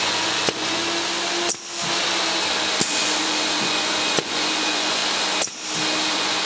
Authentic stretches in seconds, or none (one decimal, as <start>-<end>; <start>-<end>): 0.8-2.9; 5.0-6.1